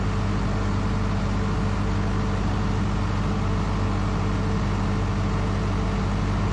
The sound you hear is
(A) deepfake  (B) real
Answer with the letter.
B